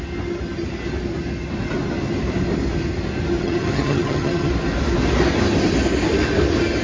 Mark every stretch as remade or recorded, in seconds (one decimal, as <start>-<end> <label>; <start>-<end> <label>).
0.0-3.4 recorded; 3.4-4.5 remade; 4.5-6.8 recorded